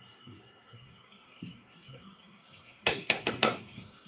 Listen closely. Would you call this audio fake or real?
fake